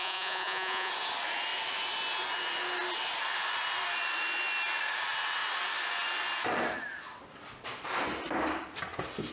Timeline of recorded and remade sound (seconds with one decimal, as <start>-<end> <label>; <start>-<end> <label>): 0.0-0.9 remade; 0.9-9.3 recorded